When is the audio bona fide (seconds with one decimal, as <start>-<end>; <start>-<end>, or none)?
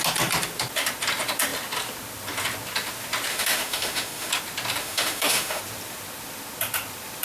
0.0-3.3; 4.3-4.8; 5.6-7.2